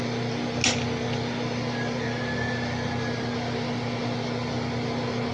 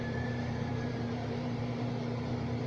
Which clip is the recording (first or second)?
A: first